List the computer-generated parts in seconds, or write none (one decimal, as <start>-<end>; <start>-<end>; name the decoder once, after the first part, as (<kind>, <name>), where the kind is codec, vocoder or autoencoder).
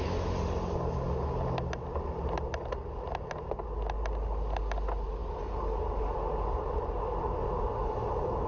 none